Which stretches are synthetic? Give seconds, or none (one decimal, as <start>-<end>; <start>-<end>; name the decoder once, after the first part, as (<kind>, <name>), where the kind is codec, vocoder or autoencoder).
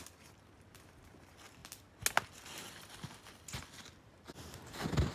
none